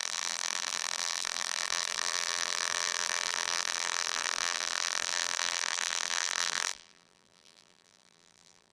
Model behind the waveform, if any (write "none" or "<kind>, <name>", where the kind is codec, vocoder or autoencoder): vocoder, BigVGAN v2